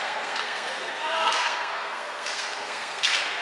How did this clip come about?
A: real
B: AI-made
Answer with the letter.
B